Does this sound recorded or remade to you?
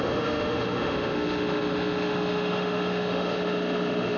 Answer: remade